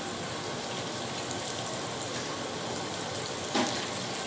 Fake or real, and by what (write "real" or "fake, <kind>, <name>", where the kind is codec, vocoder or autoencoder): real